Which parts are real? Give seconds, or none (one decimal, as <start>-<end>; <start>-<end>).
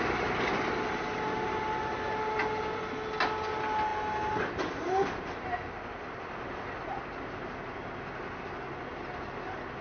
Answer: 0.0-9.8